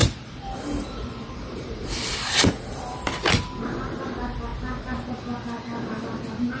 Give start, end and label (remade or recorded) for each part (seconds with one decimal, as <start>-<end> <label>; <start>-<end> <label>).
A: 0.0-4.0 remade; 4.0-6.6 recorded